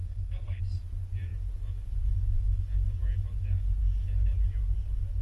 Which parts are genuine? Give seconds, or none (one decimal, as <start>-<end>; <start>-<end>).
0.6-5.2